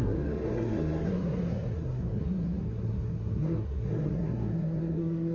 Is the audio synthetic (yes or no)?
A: yes